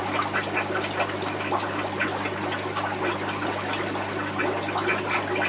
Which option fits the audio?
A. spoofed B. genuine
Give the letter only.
B